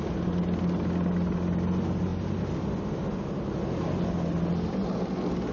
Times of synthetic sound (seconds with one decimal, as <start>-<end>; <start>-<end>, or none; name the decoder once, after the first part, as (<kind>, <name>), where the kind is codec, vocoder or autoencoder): none